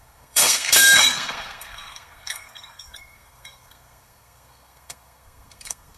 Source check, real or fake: fake